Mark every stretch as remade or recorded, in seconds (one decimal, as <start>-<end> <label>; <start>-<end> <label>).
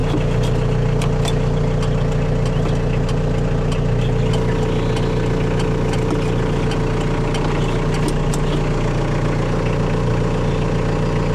0.0-11.3 recorded